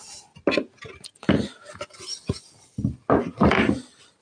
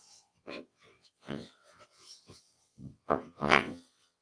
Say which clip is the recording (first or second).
first